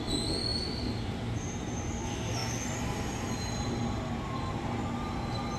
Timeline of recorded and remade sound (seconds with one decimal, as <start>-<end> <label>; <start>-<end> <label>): 0.0-5.6 recorded